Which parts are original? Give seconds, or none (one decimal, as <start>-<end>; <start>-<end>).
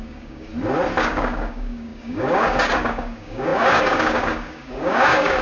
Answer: 0.5-1.0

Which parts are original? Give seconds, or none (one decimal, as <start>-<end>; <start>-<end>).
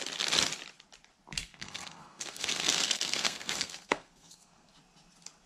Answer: 0.0-1.4; 4.7-5.5